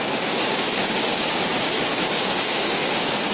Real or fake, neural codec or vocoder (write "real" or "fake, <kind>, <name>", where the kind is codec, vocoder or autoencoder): fake, codec, DAC